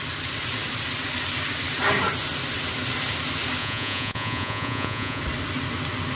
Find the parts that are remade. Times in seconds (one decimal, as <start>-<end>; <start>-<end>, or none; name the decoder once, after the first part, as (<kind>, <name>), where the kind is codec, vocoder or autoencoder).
3.6-5.2 (vocoder, Vocos)